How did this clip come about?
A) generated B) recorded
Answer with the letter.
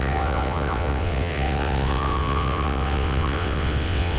A